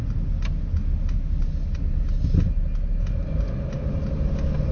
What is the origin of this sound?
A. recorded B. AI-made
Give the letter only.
A